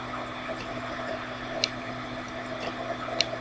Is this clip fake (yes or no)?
no